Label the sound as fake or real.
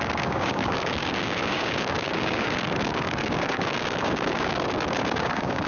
fake